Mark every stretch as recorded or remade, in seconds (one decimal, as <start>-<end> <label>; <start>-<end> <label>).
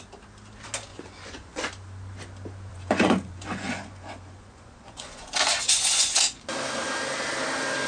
0.0-0.9 recorded; 0.9-1.6 remade; 1.6-2.7 recorded; 2.7-6.4 remade; 6.4-7.9 recorded